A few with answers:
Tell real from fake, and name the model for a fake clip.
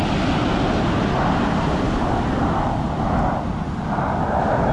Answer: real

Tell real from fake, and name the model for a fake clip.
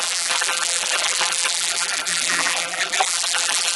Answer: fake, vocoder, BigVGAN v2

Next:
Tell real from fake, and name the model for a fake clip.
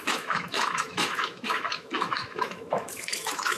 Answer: fake, autoencoder, DAC-VAE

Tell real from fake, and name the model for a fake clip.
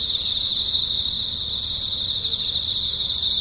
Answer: real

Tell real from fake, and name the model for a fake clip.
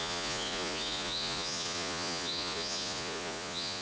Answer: fake, vocoder, Vocos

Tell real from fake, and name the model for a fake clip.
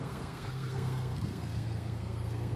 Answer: fake, codec, SNAC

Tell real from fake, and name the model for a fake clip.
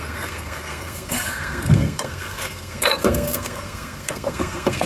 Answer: fake, codec, SNAC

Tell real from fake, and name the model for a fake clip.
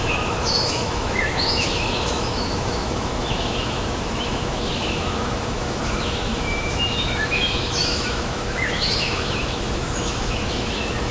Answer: fake, autoencoder, DAC-VAE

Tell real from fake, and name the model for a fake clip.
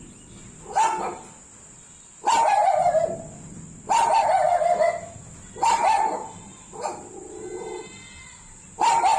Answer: real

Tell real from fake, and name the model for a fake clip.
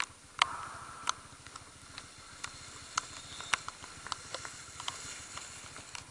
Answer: real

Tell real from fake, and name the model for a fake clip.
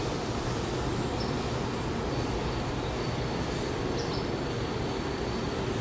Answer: real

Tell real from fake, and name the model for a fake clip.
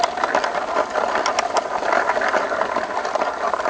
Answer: real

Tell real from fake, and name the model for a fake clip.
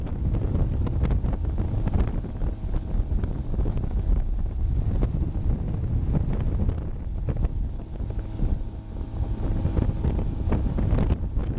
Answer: real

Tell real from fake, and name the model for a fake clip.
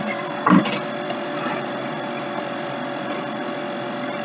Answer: fake, vocoder, BigVGAN v2